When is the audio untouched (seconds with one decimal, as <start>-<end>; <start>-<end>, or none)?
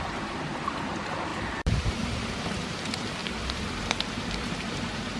none